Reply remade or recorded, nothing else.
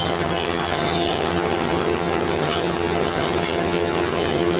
remade